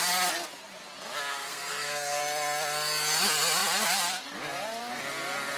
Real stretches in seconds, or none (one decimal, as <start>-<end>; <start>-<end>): 0.0-1.3; 2.2-5.6